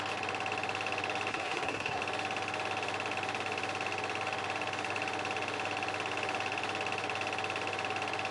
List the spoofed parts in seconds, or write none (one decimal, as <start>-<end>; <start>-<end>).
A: 1.3-2.0